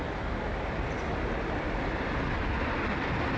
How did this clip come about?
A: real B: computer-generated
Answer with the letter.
A